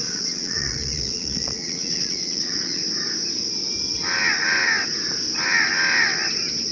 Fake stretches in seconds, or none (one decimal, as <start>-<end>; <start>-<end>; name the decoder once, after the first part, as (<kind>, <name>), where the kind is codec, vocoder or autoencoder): 0.0-2.8 (vocoder, Vocos)